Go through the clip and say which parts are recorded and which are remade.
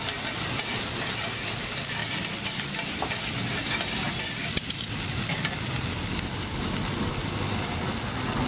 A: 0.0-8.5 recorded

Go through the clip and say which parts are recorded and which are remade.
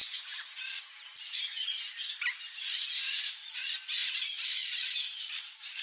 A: 0.0-5.8 recorded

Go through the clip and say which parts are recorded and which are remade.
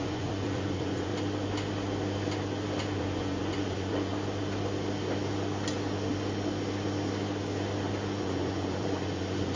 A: 0.0-1.1 remade; 1.1-3.0 recorded; 3.0-4.1 remade; 4.1-8.2 recorded; 8.2-9.6 remade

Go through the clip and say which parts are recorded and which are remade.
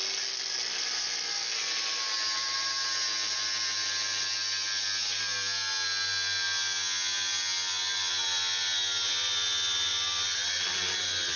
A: 0.0-11.4 recorded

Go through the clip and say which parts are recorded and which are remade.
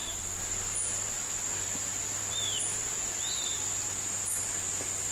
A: 0.0-5.1 recorded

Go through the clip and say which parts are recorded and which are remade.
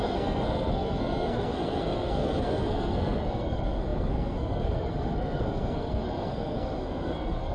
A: 0.0-7.5 remade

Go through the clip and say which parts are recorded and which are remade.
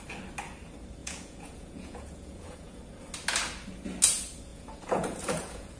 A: 0.0-1.0 recorded; 1.0-2.8 remade; 2.8-4.5 recorded; 4.5-5.8 remade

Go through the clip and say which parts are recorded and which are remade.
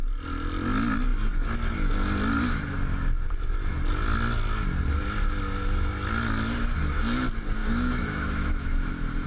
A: 0.0-7.6 recorded; 7.6-8.9 remade; 8.9-9.3 recorded